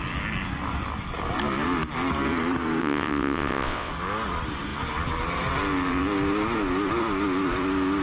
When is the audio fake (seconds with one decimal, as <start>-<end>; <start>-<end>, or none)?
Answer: 2.8-3.9